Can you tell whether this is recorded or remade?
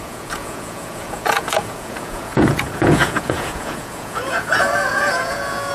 remade